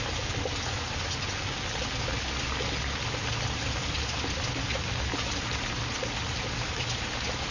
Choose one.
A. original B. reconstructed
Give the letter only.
A